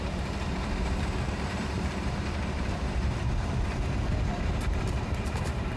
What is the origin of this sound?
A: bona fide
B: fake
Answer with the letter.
B